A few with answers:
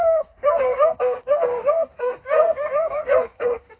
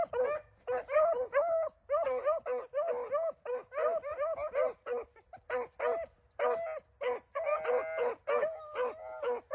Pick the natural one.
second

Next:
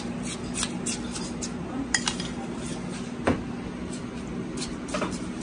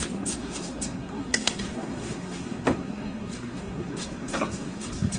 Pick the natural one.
first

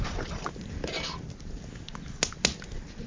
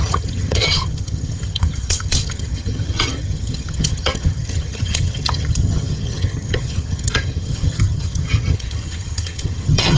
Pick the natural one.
first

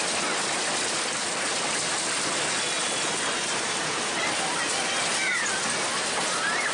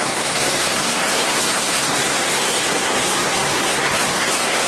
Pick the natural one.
first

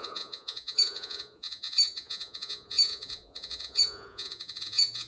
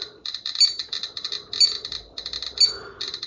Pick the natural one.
second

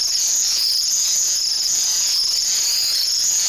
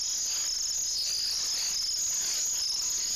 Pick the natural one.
second